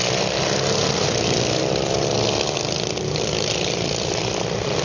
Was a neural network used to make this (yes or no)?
no